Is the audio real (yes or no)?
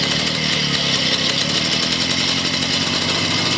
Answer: yes